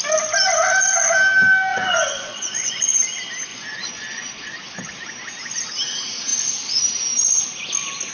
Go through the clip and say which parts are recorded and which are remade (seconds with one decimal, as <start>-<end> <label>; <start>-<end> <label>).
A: 0.0-1.7 recorded; 1.7-3.0 remade; 3.0-3.5 recorded; 3.5-4.5 remade; 4.5-8.1 recorded